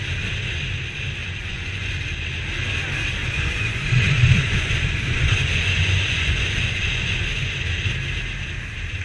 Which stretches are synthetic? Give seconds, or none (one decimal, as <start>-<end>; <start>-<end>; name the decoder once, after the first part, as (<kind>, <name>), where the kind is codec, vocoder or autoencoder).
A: 1.2-1.9 (vocoder, Vocos); 3.2-7.6